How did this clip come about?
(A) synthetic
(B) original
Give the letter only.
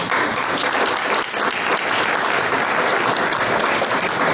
B